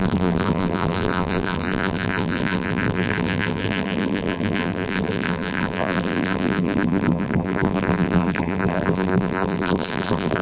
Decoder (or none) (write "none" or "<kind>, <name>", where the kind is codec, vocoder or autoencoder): vocoder, BigVGAN v2